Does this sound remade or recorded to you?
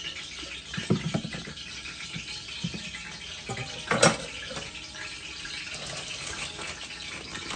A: recorded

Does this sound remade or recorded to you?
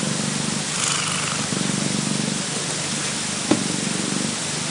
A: recorded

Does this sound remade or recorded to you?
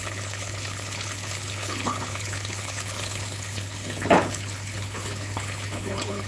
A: remade